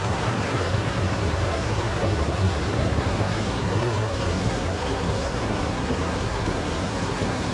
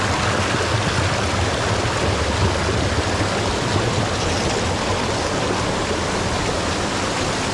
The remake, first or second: first